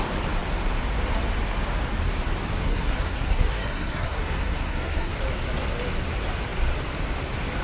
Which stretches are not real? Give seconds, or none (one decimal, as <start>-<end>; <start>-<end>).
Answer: 2.6-5.1